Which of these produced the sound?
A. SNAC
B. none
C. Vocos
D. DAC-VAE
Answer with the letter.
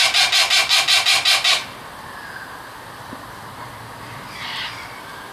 B